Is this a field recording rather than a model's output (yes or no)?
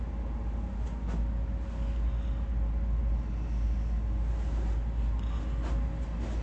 yes